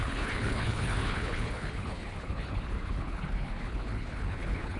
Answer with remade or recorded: remade